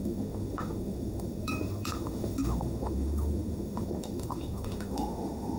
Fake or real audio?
fake